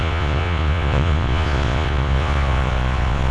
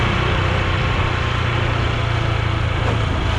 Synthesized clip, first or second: first